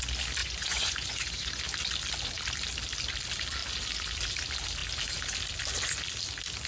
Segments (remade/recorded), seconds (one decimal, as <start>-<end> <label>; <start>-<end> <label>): 0.0-0.4 recorded; 0.4-1.6 remade; 1.6-6.7 recorded